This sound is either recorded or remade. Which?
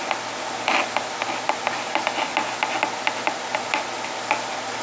recorded